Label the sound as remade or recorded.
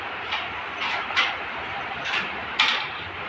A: remade